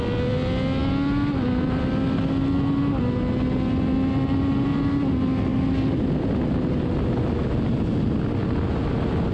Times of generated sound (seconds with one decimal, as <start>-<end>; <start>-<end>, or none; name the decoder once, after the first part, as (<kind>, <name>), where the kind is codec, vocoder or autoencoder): none

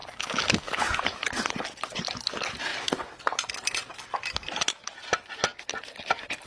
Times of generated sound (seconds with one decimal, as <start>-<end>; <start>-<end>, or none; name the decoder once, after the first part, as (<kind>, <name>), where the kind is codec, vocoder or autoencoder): 0.0-0.8 (codec, DAC)